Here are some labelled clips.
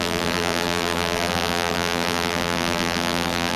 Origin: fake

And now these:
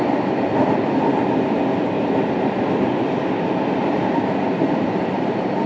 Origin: fake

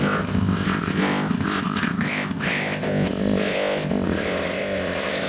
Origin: fake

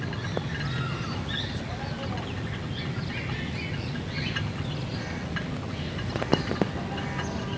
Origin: real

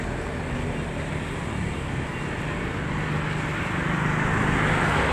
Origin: real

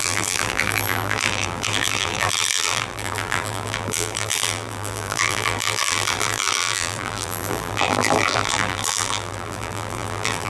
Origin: fake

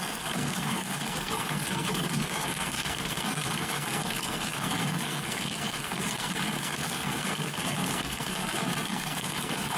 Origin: fake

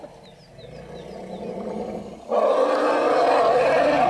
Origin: real